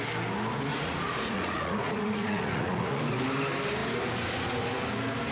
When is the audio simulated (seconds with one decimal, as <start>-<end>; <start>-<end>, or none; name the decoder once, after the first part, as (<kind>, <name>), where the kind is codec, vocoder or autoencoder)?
0.7-3.0 (vocoder, Vocos)